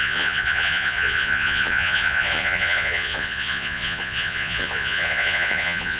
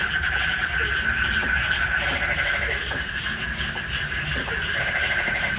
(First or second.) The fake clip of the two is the first